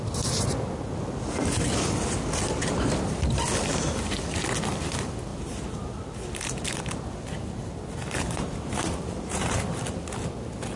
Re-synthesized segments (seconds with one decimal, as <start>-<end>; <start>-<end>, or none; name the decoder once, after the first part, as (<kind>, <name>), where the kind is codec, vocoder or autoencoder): 5.3-6.8 (vocoder, BigVGAN v2); 8.0-9.6